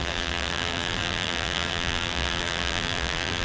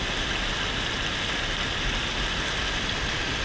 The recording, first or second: second